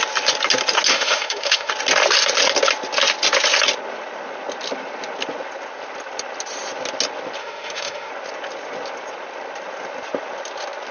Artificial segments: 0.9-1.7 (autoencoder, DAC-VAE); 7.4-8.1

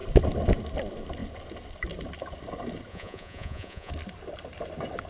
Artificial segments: 2.9-3.9 (vocoder, Vocos)

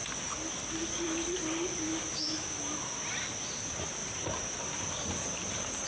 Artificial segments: 1.9-2.9 (autoencoder, DAC-VAE)

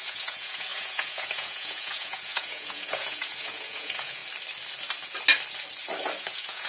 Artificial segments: 0.0-4.2 (vocoder, Vocos); 6.2-6.7

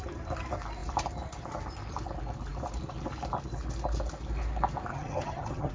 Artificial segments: 4.9-5.7 (vocoder, HiFi-GAN)

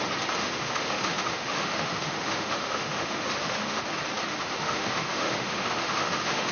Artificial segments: 0.4-3.8 (autoencoder, DAC-VAE); 4.3-6.5

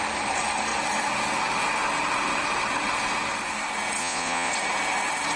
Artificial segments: 4.0-4.5 (vocoder, Vocos)

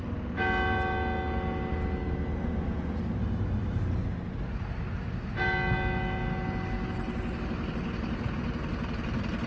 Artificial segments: 3.2-3.8 (autoencoder, DAC-VAE)